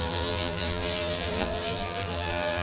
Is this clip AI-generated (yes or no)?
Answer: yes